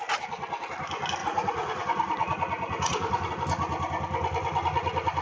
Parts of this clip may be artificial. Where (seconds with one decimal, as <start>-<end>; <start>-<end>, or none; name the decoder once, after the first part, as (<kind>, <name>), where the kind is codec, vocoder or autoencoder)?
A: 1.2-3.3 (vocoder, Vocos)